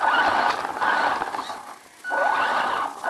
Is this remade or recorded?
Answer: recorded